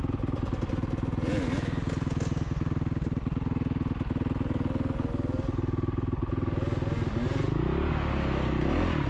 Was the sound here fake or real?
real